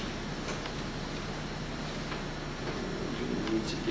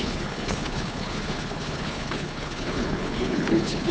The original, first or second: first